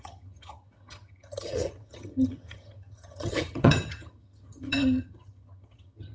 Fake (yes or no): yes